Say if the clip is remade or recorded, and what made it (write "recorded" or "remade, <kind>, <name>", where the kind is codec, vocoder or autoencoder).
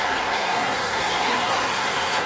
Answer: remade, codec, SNAC